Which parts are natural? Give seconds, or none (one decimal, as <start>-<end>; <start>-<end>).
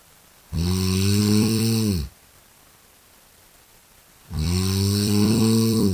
none